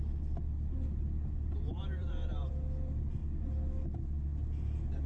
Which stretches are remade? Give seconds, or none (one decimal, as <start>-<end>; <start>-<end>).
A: 2.0-2.5